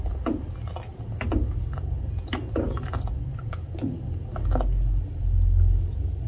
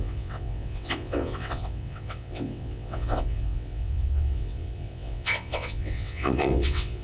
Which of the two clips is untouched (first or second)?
first